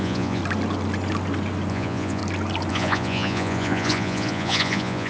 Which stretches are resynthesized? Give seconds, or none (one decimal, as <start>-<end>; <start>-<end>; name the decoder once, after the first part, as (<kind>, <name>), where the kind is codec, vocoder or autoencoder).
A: 0.0-0.4 (vocoder, Vocos); 1.7-2.2; 2.7-5.1